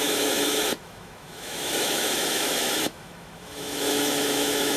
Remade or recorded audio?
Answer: remade